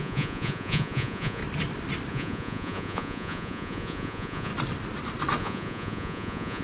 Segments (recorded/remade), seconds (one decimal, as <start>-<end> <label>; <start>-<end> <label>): 0.0-1.4 remade; 1.4-2.1 recorded; 2.1-4.5 remade; 4.5-5.4 recorded; 5.4-6.6 remade